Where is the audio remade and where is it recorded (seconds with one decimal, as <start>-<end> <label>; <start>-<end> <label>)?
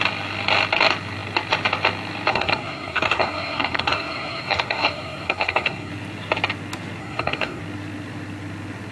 0.0-2.3 recorded; 2.3-5.9 remade; 5.9-7.0 recorded; 7.0-7.6 remade; 7.6-8.9 recorded